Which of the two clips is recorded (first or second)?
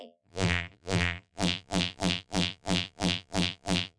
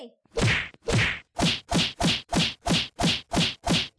second